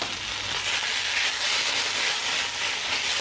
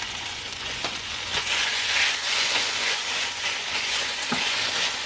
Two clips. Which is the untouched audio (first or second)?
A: first